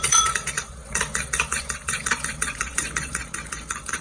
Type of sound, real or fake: fake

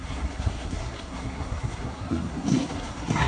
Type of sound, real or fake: fake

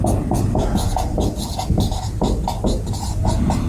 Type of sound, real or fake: real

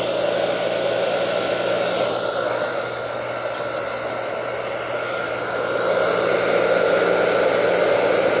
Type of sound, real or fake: real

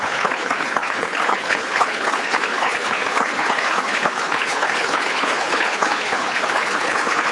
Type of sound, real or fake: fake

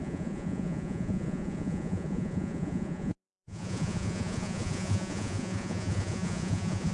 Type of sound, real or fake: fake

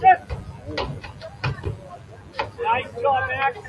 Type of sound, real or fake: real